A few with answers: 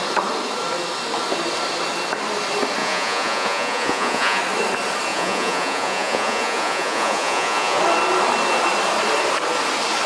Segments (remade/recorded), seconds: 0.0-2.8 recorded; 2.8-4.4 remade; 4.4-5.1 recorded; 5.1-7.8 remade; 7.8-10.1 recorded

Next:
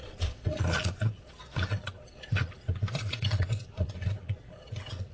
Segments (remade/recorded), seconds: 0.0-5.1 remade

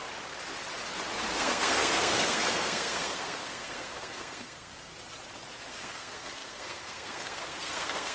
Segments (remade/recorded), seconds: 0.0-1.4 recorded; 1.4-4.9 remade; 4.9-5.7 recorded; 5.7-8.1 remade

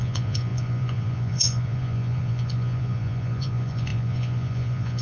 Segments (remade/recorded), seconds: 0.0-5.0 remade

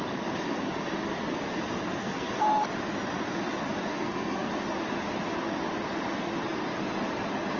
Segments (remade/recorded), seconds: 0.0-2.0 recorded; 2.0-2.6 remade; 2.6-3.9 recorded; 3.9-4.5 remade; 4.5-7.6 recorded